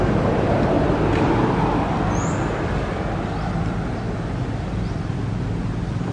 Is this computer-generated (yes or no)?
no